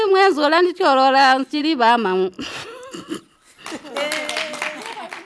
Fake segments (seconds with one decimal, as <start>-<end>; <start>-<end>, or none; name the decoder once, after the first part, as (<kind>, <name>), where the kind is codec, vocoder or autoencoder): none